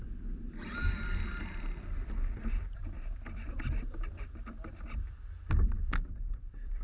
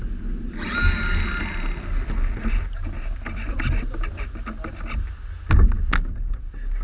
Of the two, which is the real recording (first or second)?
second